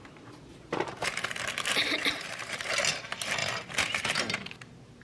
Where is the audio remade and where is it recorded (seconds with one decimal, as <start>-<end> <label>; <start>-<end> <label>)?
0.0-1.3 remade; 1.3-2.0 recorded; 2.0-2.7 remade; 2.7-3.4 recorded; 3.4-4.3 remade; 4.3-5.0 recorded